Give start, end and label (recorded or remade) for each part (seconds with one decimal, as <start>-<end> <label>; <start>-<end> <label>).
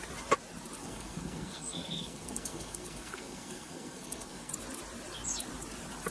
0.0-0.8 recorded; 0.8-4.5 remade; 4.5-6.1 recorded